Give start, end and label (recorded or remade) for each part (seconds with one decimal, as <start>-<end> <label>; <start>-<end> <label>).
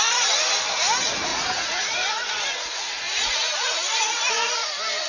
0.0-1.3 recorded; 1.3-4.2 remade; 4.2-5.1 recorded